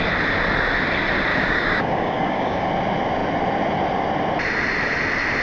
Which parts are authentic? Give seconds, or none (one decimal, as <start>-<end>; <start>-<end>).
0.0-1.3; 2.7-5.4